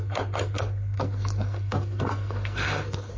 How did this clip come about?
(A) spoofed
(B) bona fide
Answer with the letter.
A